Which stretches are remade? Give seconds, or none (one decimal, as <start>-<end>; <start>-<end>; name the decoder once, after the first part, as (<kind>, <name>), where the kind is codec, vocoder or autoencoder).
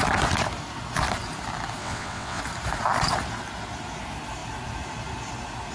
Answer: 1.8-2.4 (vocoder, WaveNeXt)